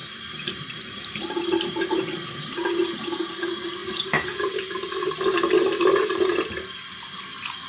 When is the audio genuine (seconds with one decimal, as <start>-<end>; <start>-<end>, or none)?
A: 3.3-3.8; 5.1-7.7